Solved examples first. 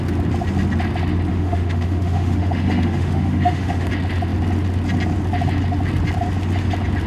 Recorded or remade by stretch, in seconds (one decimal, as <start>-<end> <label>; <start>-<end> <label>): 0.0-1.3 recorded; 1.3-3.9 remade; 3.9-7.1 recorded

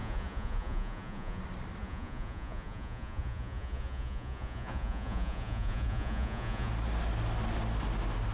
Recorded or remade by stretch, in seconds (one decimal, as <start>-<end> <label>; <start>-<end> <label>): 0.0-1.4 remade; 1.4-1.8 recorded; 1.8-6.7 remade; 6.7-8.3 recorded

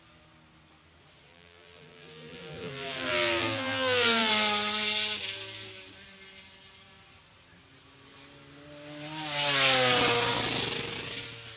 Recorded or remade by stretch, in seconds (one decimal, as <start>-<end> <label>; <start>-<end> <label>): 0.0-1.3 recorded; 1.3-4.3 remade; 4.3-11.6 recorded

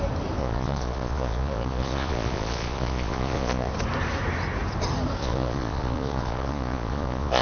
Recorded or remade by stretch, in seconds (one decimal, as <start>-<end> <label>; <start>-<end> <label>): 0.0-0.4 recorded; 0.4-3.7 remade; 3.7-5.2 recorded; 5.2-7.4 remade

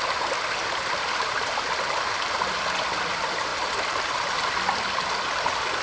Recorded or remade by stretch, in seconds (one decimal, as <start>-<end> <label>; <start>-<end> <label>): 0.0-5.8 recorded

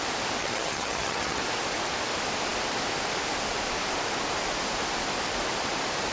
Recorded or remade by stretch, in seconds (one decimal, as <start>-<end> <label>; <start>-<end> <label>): 0.0-0.4 recorded; 0.4-1.4 remade; 1.4-6.1 recorded

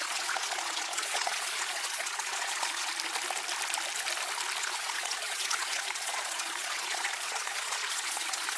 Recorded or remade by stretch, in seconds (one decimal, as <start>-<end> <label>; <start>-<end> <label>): 0.0-2.9 remade; 2.9-4.6 recorded; 4.6-8.6 remade